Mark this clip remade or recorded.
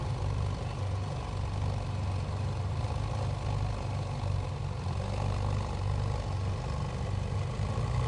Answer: recorded